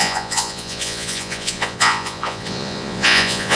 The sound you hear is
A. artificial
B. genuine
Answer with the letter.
A